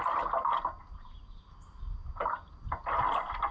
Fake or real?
real